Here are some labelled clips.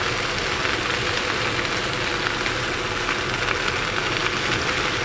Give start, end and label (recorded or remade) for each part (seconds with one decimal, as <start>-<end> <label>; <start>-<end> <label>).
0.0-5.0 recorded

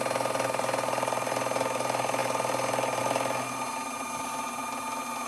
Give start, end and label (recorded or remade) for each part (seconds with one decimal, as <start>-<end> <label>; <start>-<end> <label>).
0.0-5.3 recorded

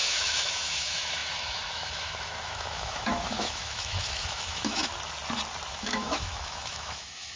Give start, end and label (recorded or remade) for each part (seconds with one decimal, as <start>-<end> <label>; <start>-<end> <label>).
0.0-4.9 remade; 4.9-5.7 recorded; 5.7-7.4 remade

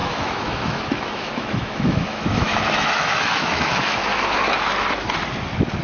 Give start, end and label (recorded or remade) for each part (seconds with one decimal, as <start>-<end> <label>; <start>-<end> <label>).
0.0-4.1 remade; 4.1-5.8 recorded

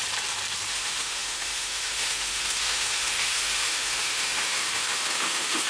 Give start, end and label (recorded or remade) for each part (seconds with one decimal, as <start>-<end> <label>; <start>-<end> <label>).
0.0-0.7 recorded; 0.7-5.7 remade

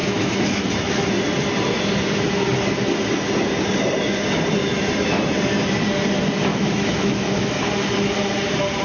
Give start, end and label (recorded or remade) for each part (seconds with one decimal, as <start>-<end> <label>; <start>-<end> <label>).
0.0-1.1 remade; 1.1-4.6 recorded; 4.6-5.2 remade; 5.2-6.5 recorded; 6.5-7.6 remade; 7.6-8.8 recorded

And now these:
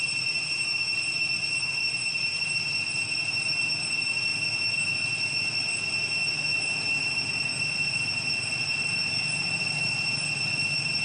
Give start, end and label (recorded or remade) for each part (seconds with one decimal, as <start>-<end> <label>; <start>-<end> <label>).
0.0-11.0 recorded